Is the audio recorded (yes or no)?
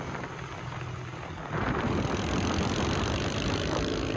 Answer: yes